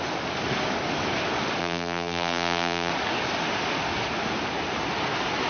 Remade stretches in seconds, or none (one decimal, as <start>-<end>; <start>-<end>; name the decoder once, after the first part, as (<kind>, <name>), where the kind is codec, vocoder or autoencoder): 1.6-2.9 (vocoder, BigVGAN v2)